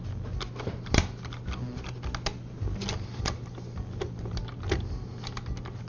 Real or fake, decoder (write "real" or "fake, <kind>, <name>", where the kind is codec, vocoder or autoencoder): real